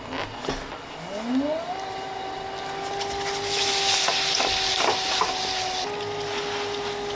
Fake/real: real